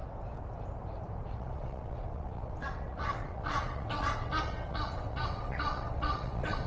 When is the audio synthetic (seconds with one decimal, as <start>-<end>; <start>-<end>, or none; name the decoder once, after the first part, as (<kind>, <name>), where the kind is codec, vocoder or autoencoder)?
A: 1.3-6.7 (vocoder, WaveNeXt)